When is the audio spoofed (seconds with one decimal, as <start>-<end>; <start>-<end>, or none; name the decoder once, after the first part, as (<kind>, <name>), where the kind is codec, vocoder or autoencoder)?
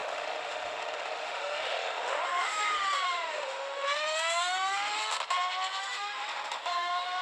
0.0-5.0 (autoencoder, DAC-VAE); 5.8-7.2